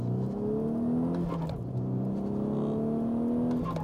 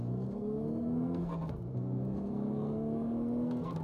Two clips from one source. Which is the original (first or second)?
first